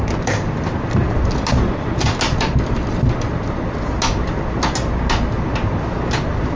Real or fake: real